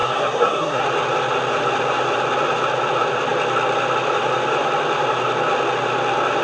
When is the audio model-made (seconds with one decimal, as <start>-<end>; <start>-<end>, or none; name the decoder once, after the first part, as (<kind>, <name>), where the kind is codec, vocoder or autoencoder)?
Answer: 0.0-0.8 (codec, SNAC)